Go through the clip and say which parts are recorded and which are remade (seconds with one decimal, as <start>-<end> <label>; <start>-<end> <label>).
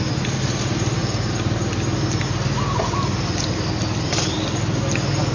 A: 0.0-5.3 recorded